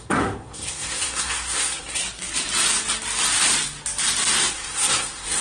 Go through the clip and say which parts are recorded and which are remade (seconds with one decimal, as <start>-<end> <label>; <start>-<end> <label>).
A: 0.0-2.0 remade; 2.0-4.5 recorded; 4.5-5.4 remade